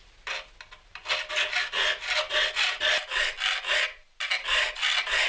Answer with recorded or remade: recorded